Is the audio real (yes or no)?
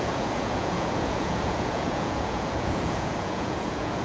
no